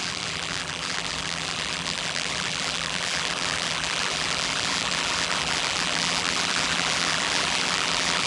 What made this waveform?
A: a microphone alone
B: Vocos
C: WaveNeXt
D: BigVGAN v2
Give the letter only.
D